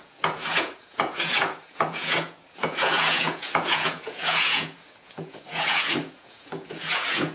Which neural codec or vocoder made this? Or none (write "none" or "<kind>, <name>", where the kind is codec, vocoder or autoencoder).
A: vocoder, Vocos